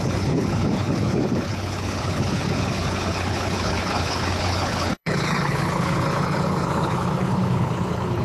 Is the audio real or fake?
fake